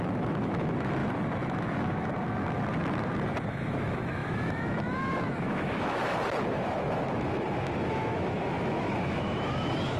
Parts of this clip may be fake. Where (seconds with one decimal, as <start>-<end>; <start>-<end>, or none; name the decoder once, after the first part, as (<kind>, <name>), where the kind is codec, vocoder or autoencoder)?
0.0-2.1 (autoencoder, DAC-VAE); 3.5-10.0